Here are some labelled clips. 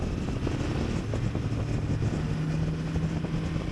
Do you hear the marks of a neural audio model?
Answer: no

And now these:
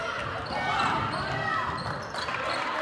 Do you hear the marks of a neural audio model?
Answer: no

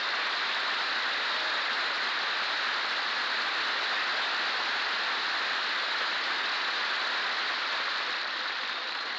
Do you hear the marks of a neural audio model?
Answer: no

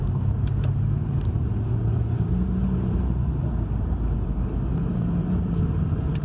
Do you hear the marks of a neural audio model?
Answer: yes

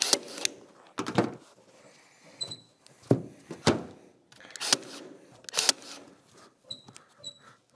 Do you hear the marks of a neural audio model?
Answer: no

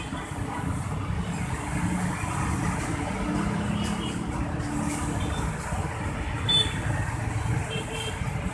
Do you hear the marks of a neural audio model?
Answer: no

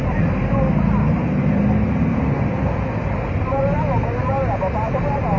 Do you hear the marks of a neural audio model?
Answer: no